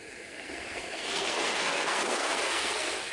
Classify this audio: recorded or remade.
remade